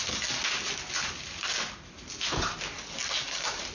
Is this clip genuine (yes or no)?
yes